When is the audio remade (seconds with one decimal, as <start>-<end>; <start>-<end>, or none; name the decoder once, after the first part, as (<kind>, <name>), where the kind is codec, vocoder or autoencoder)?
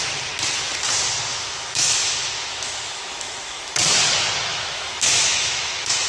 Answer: 1.3-3.7 (autoencoder, DAC-VAE); 4.5-6.1